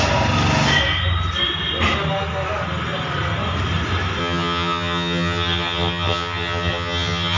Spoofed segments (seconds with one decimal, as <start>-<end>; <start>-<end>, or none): 4.2-7.4